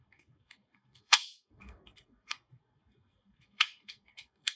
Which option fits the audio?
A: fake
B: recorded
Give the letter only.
A